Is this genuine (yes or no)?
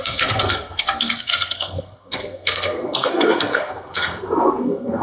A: no